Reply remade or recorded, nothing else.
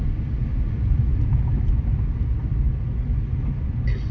recorded